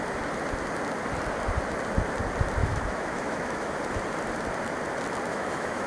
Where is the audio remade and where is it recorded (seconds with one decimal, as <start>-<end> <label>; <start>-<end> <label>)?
0.0-2.6 recorded; 2.6-3.7 remade; 3.7-5.3 recorded; 5.3-5.9 remade